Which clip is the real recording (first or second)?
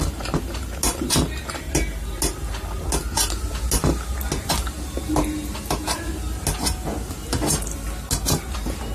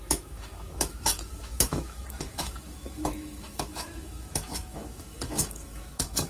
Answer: first